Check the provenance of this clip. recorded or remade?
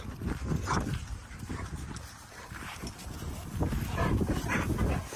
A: recorded